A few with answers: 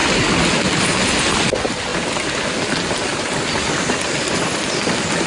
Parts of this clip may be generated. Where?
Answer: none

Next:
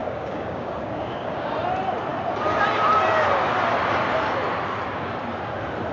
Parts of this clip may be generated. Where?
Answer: 0.0-1.5 (codec, DAC)

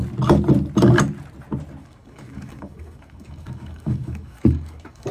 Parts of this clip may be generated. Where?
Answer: 1.8-5.1 (codec, DAC)

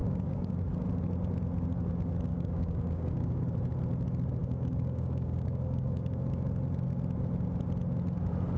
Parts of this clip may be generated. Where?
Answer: 0.0-0.5 (codec, DAC); 2.3-3.4; 4.4-6.2

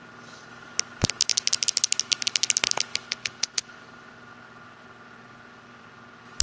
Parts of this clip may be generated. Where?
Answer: none